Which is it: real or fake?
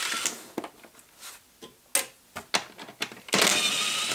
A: real